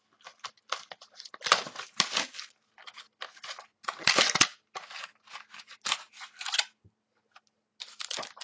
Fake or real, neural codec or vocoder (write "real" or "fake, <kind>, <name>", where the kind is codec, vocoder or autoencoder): real